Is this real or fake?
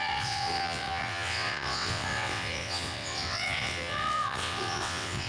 fake